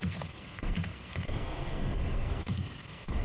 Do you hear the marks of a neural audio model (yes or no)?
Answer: yes